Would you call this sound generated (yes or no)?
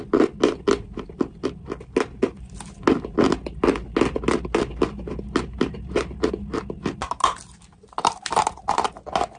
no